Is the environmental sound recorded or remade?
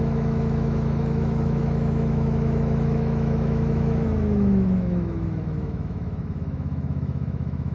remade